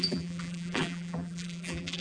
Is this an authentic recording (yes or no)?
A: no